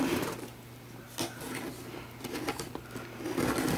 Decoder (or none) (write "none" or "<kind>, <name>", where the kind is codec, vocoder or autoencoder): none